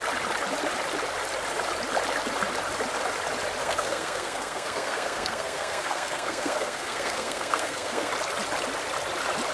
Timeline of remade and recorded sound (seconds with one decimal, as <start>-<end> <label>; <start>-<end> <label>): 0.0-3.6 recorded; 3.6-8.1 remade; 8.1-9.5 recorded